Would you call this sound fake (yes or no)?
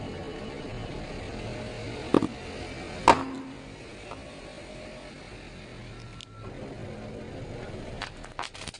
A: no